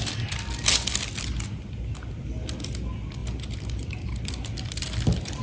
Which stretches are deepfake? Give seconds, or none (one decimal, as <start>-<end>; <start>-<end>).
none